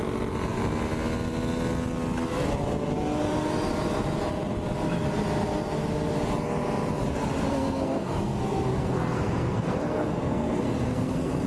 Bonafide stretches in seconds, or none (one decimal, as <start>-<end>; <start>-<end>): 0.0-7.5